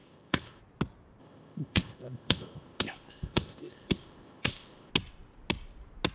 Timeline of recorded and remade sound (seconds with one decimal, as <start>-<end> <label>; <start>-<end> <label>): 0.0-0.6 remade; 0.6-1.2 recorded; 1.2-4.9 remade; 4.9-6.1 recorded